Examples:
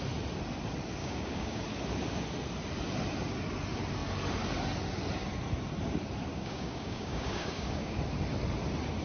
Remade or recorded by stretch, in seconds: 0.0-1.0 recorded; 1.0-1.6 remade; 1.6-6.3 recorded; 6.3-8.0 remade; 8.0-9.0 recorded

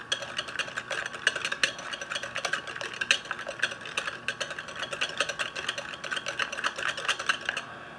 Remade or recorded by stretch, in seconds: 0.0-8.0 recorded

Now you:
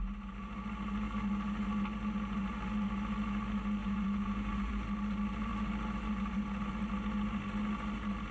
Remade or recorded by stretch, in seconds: 0.0-3.8 recorded; 3.8-4.7 remade; 4.7-8.3 recorded

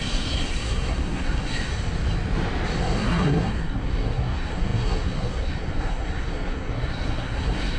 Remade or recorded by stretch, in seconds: 0.0-1.7 remade; 1.7-2.8 recorded; 2.8-7.8 remade

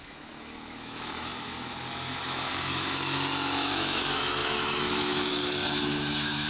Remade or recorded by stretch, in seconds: 0.0-6.5 remade

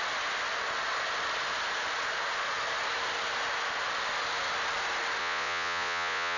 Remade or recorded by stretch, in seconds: 0.0-5.2 recorded; 5.2-6.4 remade

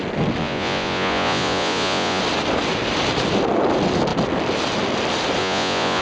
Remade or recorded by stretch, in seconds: 0.0-0.4 recorded; 0.4-2.2 remade; 2.2-5.4 recorded; 5.4-6.0 remade